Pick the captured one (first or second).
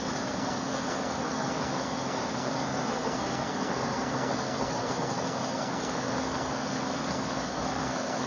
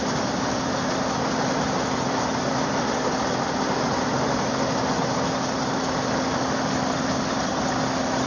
second